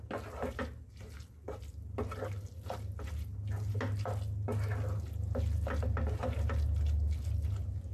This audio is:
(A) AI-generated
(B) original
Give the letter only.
B